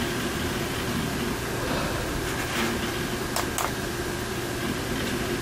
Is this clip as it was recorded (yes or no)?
yes